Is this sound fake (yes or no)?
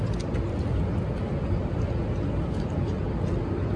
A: no